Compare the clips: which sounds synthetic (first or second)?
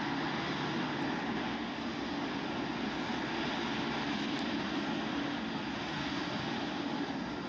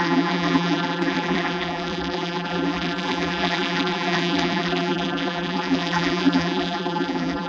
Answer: second